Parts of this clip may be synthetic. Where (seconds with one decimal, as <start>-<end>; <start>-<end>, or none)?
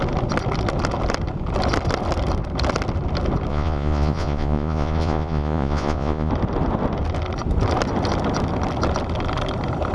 3.5-6.3